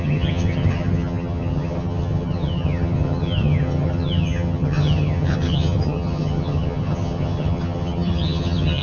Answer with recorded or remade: remade